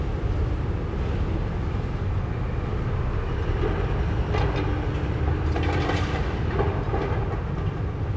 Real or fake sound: real